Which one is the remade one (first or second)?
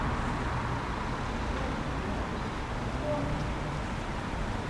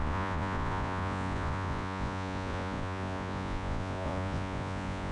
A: second